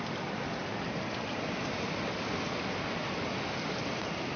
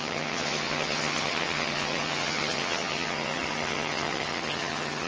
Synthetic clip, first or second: second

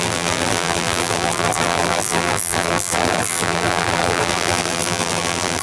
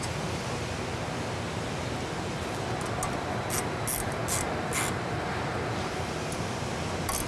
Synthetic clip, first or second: first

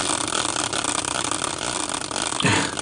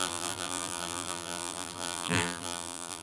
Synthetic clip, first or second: second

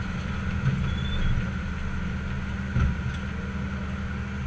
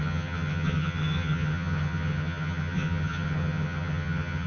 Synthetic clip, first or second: second